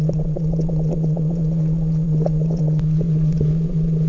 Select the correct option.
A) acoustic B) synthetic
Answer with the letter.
B